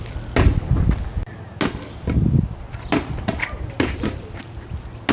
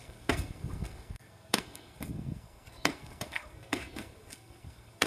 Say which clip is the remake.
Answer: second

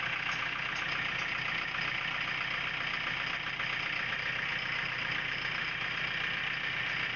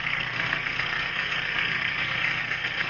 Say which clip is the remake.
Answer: second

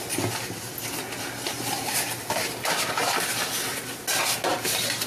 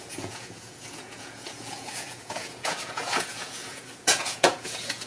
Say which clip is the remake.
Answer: second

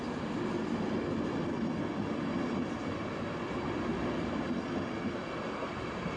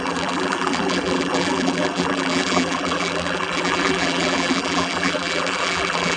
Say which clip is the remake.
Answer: second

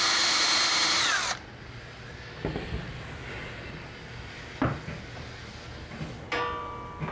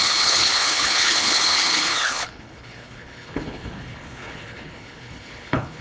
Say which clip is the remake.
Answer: second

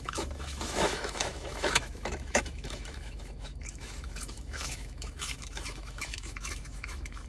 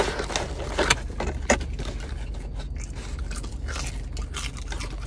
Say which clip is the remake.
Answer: first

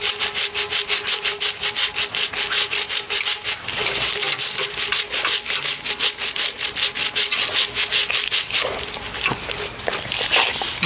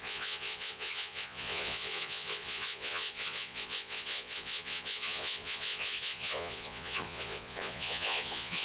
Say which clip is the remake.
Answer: second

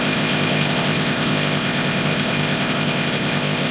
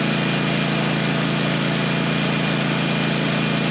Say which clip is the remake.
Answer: first